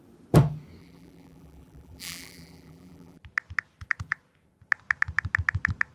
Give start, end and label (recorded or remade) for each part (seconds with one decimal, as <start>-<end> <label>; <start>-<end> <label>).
0.0-0.8 recorded; 0.8-3.2 remade; 3.2-5.9 recorded